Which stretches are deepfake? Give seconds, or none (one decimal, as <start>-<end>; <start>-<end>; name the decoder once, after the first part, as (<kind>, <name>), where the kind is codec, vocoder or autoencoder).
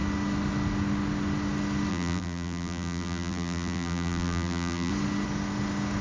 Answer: 1.9-4.9 (vocoder, BigVGAN v2)